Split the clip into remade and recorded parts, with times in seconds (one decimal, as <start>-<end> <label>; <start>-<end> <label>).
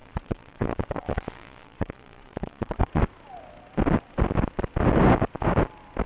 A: 0.0-3.0 remade; 3.0-6.1 recorded